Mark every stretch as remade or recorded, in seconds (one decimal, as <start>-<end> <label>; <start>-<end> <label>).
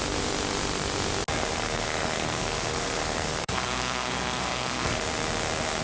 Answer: 0.0-1.5 recorded; 1.5-5.0 remade; 5.0-5.8 recorded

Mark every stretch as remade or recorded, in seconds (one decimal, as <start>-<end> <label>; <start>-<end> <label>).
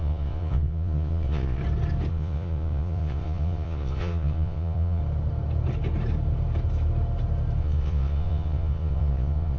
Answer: 0.0-1.6 remade; 1.6-2.1 recorded; 2.1-5.0 remade; 5.0-7.6 recorded; 7.6-9.6 remade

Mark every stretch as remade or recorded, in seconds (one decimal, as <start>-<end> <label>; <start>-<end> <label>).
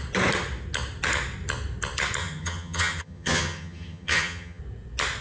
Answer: 0.0-2.2 recorded; 2.2-4.6 remade; 4.6-5.2 recorded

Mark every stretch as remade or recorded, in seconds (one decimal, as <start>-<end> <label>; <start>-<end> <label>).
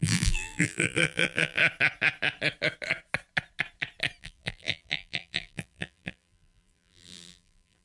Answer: 0.0-1.6 remade; 1.6-4.2 recorded; 4.2-7.8 remade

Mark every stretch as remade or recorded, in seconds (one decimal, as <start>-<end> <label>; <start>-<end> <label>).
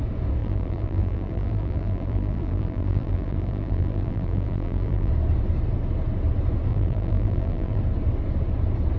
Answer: 0.0-0.4 recorded; 0.4-5.1 remade; 5.1-6.7 recorded; 6.7-7.8 remade; 7.8-9.0 recorded